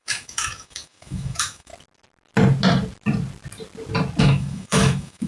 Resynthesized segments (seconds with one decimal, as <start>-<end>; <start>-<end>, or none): 0.0-1.7; 4.2-5.3